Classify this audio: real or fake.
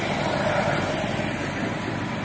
real